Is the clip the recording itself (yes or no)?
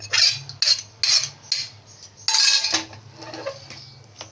yes